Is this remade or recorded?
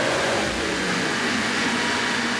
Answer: remade